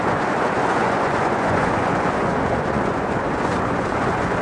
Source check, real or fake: fake